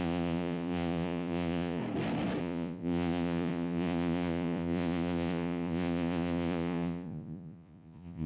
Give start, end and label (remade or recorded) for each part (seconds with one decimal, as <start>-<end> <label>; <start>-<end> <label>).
0.0-1.8 remade; 1.8-2.4 recorded; 2.4-8.3 remade

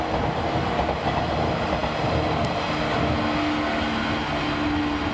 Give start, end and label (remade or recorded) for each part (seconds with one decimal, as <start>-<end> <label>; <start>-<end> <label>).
0.0-5.1 recorded

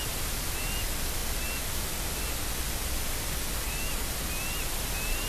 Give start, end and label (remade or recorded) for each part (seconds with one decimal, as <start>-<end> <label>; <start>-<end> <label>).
0.0-1.2 remade; 1.2-4.4 recorded; 4.4-5.3 remade

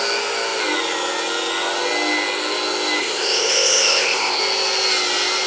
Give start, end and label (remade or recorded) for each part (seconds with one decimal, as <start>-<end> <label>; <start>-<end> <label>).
0.0-3.0 recorded; 3.0-4.4 remade; 4.4-5.5 recorded

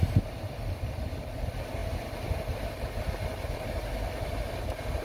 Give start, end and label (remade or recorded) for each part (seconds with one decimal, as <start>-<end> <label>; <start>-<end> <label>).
0.0-5.0 recorded

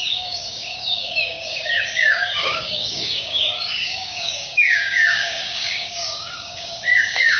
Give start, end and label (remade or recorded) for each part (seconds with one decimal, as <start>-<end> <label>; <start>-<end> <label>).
0.0-7.4 remade

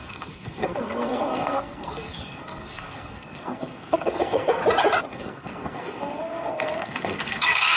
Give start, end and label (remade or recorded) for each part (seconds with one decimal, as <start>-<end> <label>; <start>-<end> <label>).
0.0-4.6 remade; 4.6-5.1 recorded; 5.1-7.8 remade

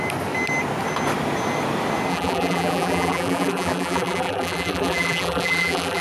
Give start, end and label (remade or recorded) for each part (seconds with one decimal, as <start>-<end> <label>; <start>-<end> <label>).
0.0-2.1 recorded; 2.1-6.0 remade